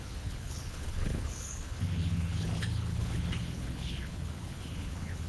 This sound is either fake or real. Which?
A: fake